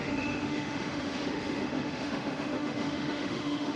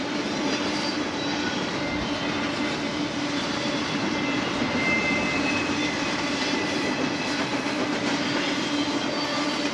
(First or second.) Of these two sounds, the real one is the second